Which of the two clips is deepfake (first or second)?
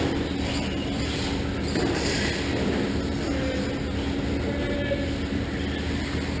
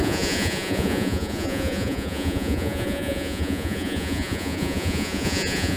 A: second